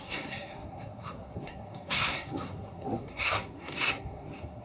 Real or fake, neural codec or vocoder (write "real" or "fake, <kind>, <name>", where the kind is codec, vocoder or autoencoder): fake, codec, SNAC